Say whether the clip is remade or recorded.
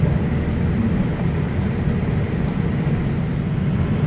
recorded